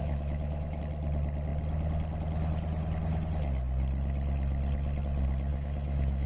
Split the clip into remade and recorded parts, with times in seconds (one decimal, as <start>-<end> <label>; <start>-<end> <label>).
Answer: 0.0-0.8 remade; 0.8-5.5 recorded; 5.5-6.3 remade